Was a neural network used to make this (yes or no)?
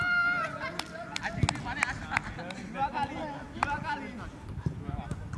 no